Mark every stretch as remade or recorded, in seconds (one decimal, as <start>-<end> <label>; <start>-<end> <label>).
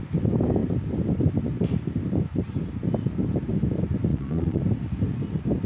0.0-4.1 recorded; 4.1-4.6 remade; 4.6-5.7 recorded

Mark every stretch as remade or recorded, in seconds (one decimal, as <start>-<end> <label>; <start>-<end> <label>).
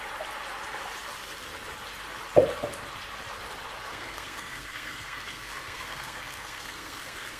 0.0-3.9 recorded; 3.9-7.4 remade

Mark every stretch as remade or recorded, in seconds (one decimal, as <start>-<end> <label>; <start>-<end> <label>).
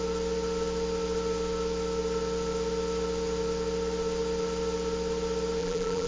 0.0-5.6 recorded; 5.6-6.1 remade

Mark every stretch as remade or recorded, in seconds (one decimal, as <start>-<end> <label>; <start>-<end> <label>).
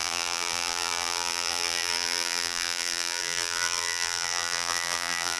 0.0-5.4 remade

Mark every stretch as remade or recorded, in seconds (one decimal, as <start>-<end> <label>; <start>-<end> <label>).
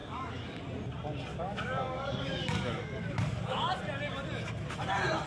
0.0-0.6 remade; 0.6-1.3 recorded; 1.3-3.8 remade; 3.8-5.3 recorded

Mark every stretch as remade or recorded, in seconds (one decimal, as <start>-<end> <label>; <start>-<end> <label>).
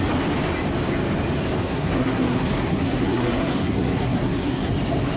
0.0-1.6 recorded; 1.6-4.7 remade; 4.7-5.2 recorded